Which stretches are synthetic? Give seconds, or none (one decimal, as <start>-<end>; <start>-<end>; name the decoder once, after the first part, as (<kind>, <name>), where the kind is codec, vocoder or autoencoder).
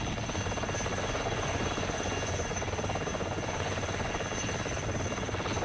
0.9-2.7 (vocoder, Vocos); 3.1-4.1